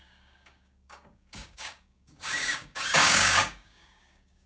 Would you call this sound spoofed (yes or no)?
yes